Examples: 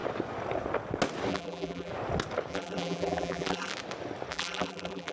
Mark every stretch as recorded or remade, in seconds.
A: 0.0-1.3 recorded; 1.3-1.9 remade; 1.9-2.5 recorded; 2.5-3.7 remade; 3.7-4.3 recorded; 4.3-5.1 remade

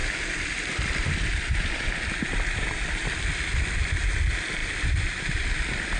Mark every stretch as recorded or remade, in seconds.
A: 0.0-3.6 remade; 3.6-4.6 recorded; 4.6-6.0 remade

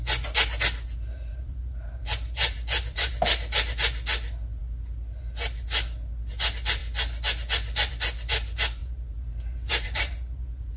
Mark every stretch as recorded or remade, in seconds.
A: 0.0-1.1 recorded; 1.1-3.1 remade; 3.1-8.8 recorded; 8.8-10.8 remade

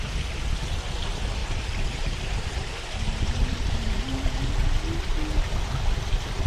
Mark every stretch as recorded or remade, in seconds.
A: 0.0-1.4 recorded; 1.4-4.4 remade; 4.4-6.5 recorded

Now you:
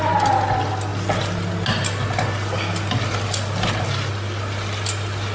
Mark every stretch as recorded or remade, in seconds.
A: 0.0-5.3 recorded

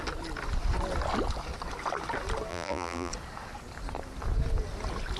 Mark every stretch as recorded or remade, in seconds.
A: 0.0-2.5 recorded; 2.5-3.1 remade; 3.1-5.2 recorded

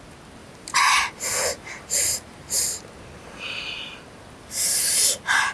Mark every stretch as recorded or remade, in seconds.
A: 0.0-0.4 recorded; 0.4-3.6 remade; 3.6-5.5 recorded